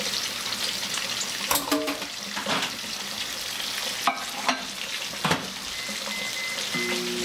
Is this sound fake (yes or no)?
no